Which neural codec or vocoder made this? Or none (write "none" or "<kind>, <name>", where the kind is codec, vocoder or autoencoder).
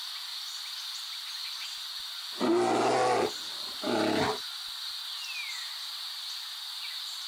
none